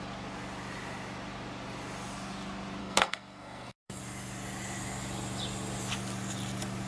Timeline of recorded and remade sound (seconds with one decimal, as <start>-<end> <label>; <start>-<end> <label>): 0.0-2.8 recorded; 2.8-4.0 remade; 4.0-6.9 recorded